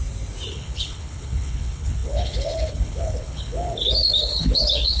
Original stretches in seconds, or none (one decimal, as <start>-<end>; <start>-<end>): 0.0-0.5